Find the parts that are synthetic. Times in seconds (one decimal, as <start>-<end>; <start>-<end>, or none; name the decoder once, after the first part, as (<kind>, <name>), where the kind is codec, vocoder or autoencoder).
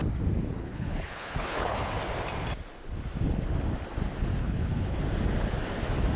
0.6-1.8 (codec, HILCodec); 4.4-5.0